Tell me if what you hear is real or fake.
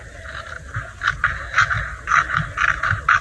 real